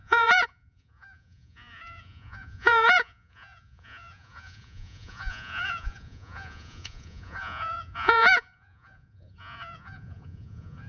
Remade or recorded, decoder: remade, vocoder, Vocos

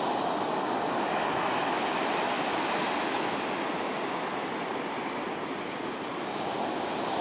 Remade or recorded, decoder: recorded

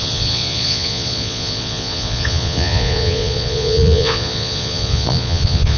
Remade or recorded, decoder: remade, vocoder, Vocos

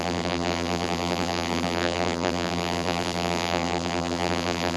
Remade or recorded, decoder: remade, vocoder, BigVGAN v2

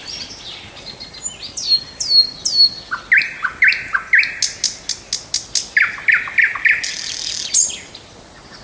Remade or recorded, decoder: recorded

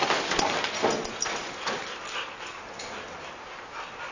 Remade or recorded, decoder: recorded